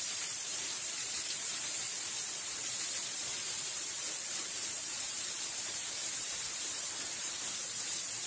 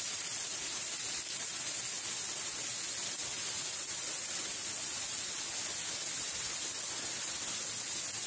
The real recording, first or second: second